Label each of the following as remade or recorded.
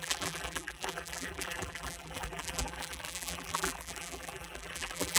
remade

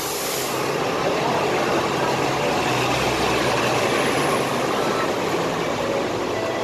recorded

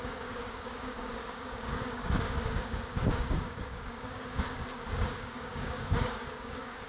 remade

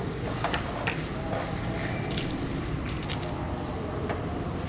recorded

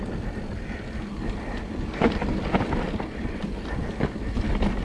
recorded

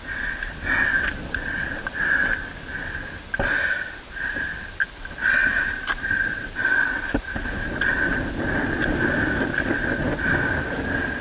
recorded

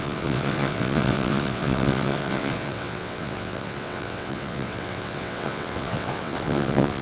remade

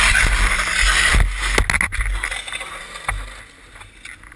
recorded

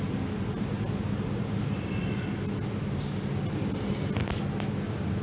recorded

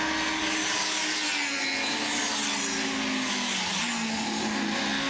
recorded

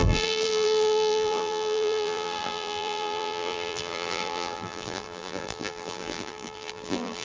remade